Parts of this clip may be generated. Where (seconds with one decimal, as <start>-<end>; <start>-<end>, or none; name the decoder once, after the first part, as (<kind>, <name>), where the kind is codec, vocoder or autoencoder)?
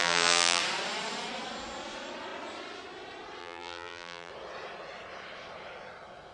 0.0-0.6 (vocoder, BigVGAN v2); 3.4-4.3